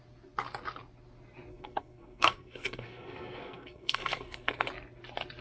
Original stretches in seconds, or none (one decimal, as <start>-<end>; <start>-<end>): 0.0-1.5; 4.7-5.4